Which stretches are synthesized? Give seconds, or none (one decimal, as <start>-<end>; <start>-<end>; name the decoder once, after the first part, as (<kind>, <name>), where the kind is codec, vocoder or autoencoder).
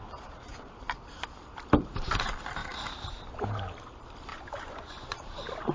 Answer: 4.3-5.2 (vocoder, Vocos)